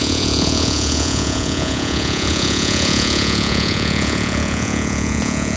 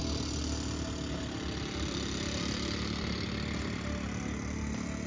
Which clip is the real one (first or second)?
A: second